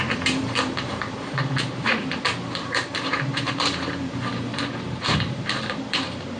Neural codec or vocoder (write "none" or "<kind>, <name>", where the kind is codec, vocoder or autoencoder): vocoder, BigVGAN v2